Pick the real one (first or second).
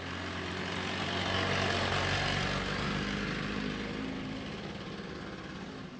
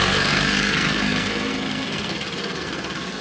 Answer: first